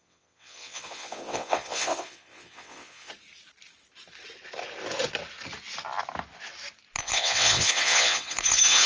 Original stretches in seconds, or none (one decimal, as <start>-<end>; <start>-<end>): 3.1-7.0